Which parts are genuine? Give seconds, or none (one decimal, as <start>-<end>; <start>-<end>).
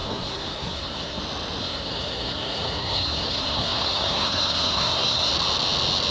1.2-1.6; 5.3-6.1